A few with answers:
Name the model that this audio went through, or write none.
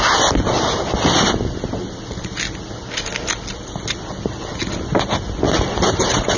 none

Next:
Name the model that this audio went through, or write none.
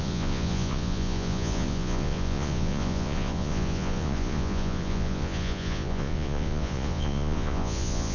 vocoder, Vocos